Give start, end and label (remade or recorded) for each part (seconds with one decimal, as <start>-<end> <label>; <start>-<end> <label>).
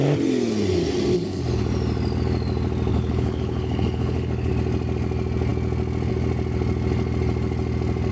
0.0-1.1 recorded; 1.1-1.6 remade; 1.6-2.9 recorded; 2.9-4.5 remade; 4.5-8.1 recorded